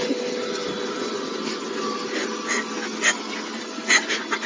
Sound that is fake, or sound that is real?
real